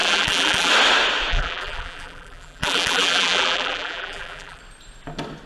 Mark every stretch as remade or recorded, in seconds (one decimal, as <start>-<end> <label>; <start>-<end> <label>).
0.0-0.7 remade; 0.7-1.3 recorded; 1.3-4.6 remade; 4.6-5.5 recorded